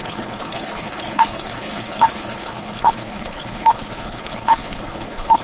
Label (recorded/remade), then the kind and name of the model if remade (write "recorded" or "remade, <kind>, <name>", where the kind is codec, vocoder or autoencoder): remade, codec, HILCodec